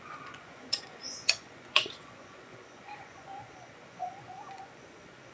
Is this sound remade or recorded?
remade